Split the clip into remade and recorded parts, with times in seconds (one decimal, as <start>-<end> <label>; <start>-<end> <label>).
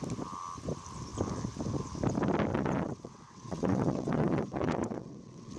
0.0-2.5 recorded; 2.5-5.6 remade